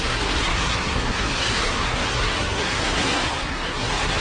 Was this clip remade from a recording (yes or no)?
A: yes